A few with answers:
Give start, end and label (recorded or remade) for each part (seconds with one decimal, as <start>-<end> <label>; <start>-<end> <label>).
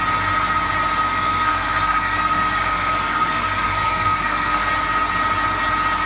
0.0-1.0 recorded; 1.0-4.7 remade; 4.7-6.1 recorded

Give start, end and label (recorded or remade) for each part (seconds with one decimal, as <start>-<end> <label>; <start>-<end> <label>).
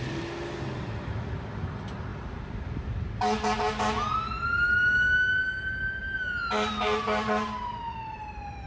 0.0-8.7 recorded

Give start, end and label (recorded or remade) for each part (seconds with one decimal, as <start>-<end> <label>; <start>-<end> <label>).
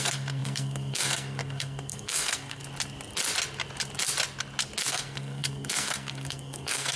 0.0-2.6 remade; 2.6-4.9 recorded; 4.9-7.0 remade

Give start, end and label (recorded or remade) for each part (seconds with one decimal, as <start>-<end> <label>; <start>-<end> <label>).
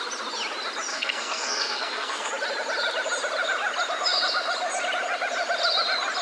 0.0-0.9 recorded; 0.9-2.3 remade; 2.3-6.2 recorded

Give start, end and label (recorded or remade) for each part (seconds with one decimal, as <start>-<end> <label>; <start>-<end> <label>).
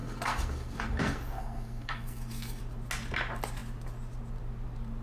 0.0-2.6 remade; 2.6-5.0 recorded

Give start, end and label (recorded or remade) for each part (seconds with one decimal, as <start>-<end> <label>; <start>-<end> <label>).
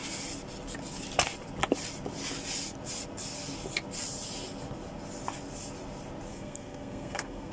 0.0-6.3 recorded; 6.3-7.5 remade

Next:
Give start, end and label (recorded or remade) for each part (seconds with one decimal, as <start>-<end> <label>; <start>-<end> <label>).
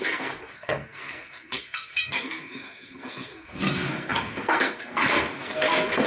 0.0-6.1 remade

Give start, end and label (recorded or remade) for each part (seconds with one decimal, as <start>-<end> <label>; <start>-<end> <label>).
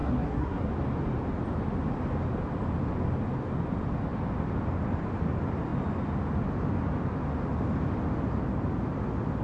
0.0-0.7 remade; 0.7-9.4 recorded